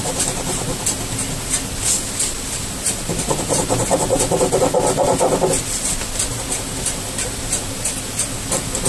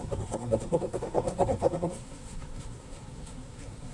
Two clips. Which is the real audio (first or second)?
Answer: first